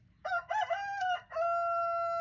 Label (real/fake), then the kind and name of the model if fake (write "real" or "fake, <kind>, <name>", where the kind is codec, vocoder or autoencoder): real